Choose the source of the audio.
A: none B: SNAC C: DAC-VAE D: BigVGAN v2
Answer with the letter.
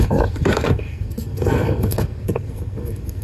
B